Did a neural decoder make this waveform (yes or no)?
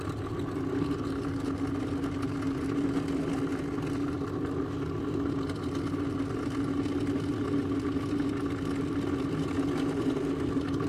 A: no